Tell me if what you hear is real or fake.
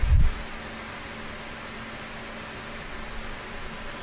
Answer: real